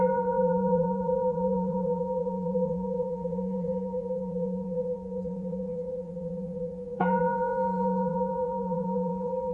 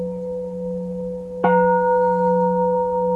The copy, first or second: first